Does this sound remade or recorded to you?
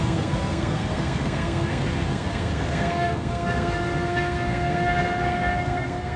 remade